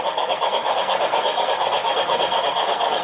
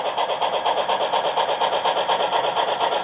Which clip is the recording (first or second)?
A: second